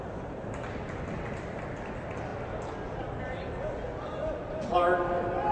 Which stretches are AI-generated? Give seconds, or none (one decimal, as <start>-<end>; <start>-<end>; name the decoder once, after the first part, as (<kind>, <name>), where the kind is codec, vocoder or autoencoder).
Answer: none